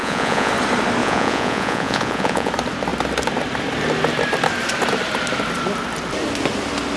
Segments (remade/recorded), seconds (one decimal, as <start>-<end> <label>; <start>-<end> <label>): 0.0-0.5 remade; 0.5-1.0 recorded; 1.0-2.5 remade; 2.5-7.0 recorded